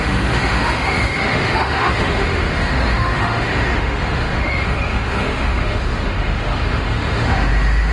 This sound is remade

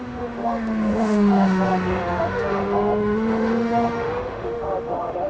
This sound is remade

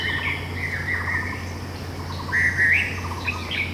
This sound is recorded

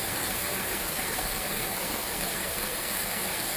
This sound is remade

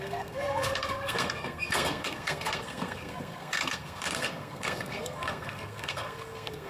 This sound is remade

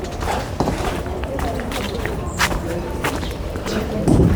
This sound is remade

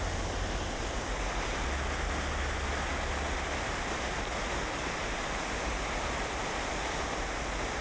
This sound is recorded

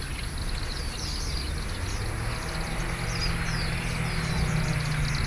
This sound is recorded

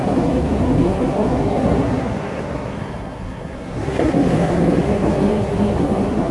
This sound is remade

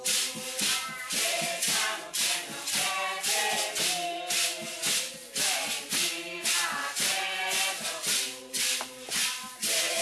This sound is recorded